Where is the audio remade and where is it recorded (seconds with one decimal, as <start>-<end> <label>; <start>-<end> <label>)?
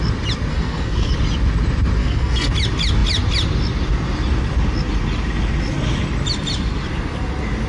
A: 0.0-0.5 recorded; 0.5-1.1 remade; 1.1-2.0 recorded; 2.0-2.5 remade; 2.5-7.7 recorded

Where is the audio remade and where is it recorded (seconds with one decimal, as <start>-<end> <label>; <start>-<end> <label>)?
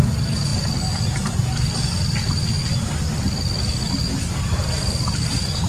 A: 0.0-5.7 recorded